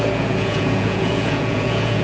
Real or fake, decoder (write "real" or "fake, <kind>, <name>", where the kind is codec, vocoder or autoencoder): fake, vocoder, Vocos